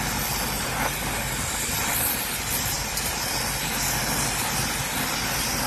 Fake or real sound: real